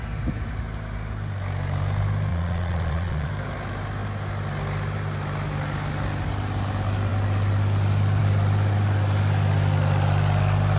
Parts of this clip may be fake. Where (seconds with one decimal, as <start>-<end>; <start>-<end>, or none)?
2.3-3.3